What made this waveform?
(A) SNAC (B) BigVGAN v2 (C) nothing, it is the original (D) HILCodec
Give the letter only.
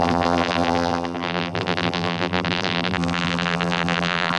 B